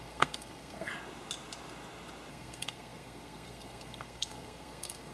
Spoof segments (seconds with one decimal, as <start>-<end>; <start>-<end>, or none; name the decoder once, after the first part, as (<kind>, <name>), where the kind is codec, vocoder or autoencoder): 0.0-0.9 (codec, SNAC); 2.3-5.1